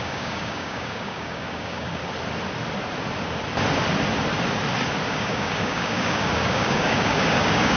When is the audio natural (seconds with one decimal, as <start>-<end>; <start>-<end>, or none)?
2.0-5.1